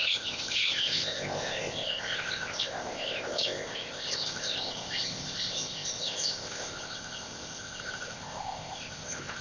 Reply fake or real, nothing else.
fake